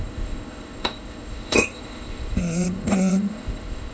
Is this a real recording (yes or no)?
no